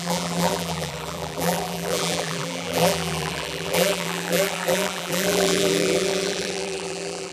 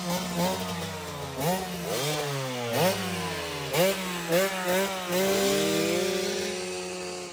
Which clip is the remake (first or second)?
first